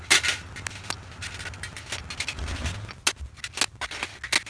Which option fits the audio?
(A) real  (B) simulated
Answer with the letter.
A